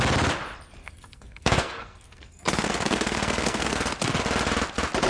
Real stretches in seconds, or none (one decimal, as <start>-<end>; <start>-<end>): 0.0-0.8; 3.9-5.1